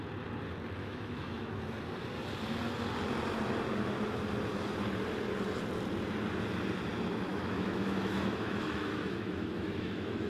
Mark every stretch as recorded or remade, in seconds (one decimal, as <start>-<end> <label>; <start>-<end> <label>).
0.0-0.8 recorded; 0.8-1.6 remade; 1.6-7.3 recorded; 7.3-10.3 remade